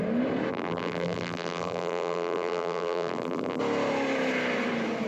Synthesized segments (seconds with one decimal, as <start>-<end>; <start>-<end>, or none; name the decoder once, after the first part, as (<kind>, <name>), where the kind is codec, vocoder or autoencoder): 0.5-3.6 (vocoder, BigVGAN v2)

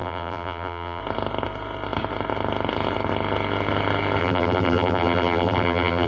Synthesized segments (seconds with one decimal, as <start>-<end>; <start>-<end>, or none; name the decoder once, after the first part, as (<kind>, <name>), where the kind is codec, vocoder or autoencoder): 0.0-1.0 (vocoder, BigVGAN v2); 4.2-6.1

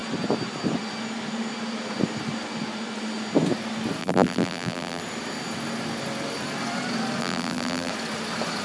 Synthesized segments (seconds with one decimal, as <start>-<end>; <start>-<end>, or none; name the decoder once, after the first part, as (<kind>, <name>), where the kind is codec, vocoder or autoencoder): 4.0-5.0 (vocoder, BigVGAN v2); 7.2-7.9

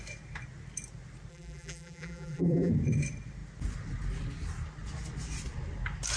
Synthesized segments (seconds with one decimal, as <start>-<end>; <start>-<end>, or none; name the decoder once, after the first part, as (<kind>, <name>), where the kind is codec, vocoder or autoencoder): 1.3-2.7 (vocoder, BigVGAN v2)